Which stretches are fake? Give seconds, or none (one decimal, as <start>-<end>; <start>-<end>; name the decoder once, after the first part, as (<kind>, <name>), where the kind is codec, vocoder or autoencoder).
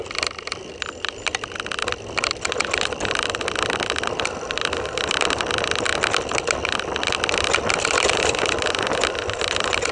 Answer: 0.0-5.9 (vocoder, BigVGAN v2); 7.7-9.9